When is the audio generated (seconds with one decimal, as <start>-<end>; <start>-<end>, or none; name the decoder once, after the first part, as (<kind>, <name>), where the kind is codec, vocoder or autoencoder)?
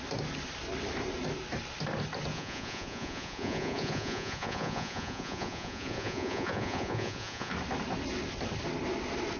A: 2.3-7.5 (vocoder, Vocos)